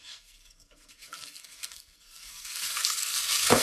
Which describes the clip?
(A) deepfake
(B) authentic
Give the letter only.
A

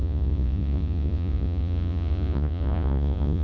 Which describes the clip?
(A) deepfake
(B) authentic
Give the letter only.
A